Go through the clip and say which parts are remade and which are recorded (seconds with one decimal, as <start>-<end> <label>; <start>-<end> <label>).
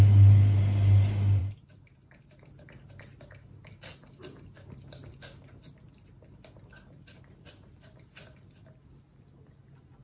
0.0-1.4 recorded; 1.4-2.5 remade; 2.5-10.0 recorded